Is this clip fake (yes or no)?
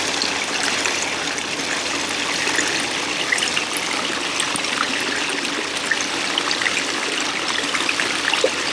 no